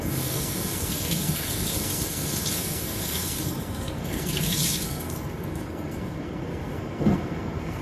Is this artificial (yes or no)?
yes